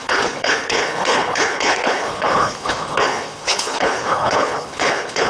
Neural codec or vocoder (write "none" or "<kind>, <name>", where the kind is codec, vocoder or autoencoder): codec, HILCodec